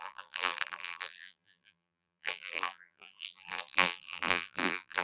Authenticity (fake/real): fake